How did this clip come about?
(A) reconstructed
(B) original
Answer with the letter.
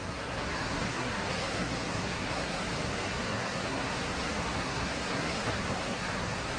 A